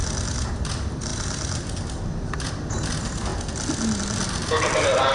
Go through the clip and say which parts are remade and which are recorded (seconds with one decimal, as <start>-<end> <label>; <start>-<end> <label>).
0.0-3.3 remade; 3.3-4.0 recorded; 4.0-5.1 remade